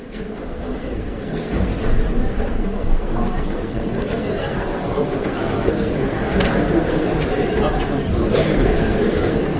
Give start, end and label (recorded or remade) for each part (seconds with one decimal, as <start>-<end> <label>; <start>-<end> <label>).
0.0-1.7 remade; 1.7-2.3 recorded; 2.3-7.1 remade; 7.1-8.3 recorded; 8.3-9.6 remade